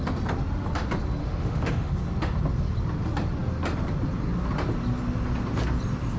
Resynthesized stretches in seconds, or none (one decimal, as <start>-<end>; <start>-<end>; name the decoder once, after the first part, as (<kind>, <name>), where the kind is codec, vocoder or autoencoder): 1.2-1.9 (autoencoder, DAC-VAE)